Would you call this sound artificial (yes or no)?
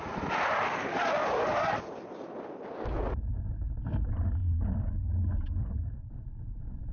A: no